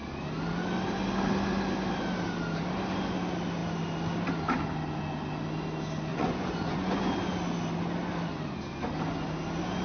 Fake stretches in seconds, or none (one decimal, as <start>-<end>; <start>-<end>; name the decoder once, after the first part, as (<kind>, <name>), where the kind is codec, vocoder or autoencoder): 6.1-7.0 (vocoder, Vocos)